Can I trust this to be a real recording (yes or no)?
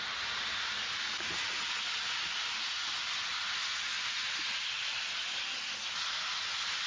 yes